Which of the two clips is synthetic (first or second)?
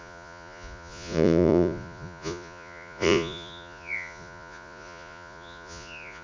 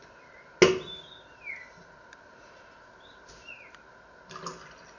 first